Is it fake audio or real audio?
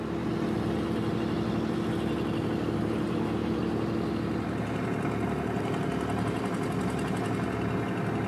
real